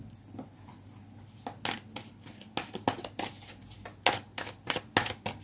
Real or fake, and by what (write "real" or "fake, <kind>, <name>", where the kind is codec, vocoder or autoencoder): real